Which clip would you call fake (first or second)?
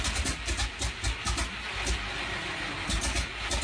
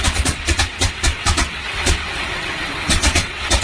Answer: second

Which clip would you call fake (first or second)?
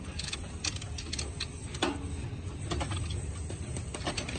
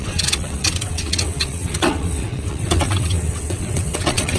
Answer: second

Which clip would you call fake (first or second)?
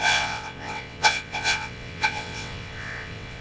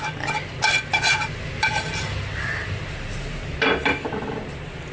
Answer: first